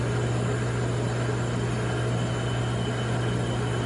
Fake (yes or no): no